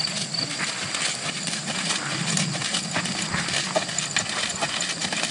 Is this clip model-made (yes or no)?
no